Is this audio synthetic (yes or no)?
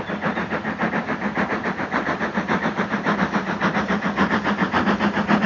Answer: no